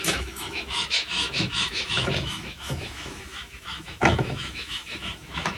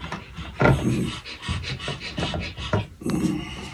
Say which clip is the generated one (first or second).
first